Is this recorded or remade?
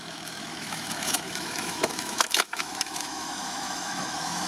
remade